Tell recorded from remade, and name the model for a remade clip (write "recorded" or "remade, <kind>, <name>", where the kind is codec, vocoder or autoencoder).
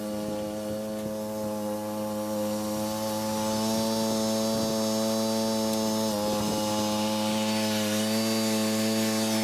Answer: recorded